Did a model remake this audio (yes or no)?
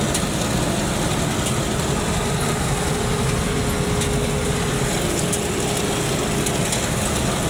no